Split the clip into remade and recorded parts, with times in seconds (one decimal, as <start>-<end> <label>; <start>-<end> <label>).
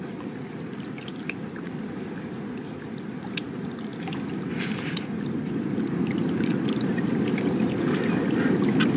0.0-9.0 recorded